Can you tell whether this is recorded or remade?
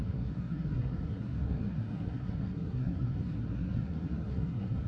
remade